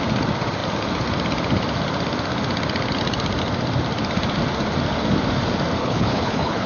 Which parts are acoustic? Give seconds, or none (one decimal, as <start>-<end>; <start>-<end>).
0.0-5.8